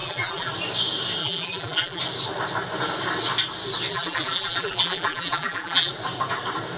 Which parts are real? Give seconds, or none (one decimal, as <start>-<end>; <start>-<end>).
0.5-1.2; 2.0-3.9; 5.9-6.8